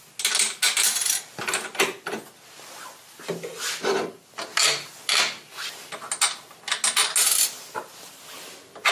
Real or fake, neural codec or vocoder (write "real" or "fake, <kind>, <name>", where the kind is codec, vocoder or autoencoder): real